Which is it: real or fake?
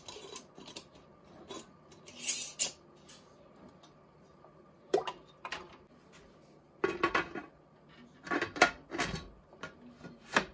real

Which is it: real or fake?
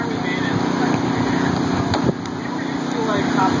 real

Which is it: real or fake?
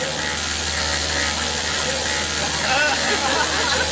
real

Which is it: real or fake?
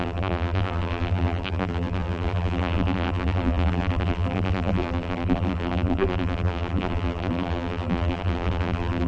fake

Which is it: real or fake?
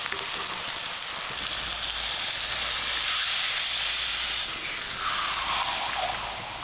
real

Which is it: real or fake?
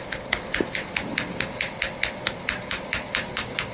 real